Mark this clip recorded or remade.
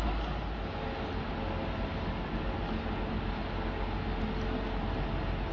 recorded